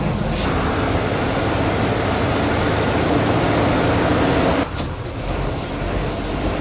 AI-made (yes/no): no